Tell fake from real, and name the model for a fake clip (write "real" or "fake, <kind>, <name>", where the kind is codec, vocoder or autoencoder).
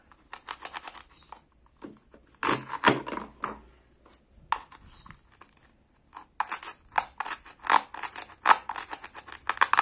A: real